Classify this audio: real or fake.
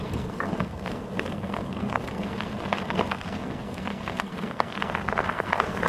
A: fake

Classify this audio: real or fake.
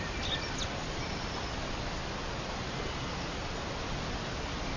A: real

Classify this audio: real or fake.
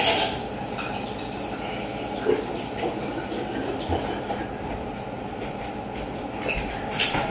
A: real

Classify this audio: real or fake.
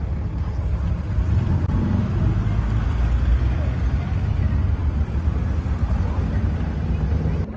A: real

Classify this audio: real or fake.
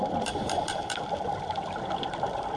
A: fake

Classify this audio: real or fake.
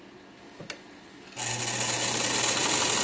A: real